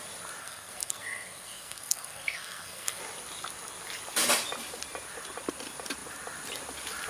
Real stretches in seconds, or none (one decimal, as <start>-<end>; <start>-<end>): 0.0-0.4; 3.0-7.1